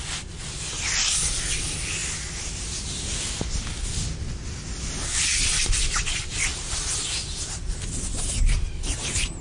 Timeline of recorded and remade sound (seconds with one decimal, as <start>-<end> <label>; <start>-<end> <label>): 0.0-9.4 recorded